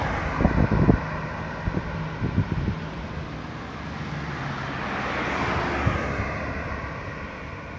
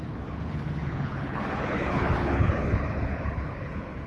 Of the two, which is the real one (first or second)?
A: first